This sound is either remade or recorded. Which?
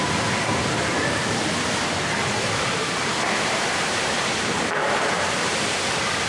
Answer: remade